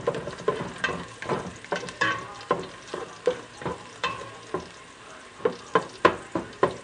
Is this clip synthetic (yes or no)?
no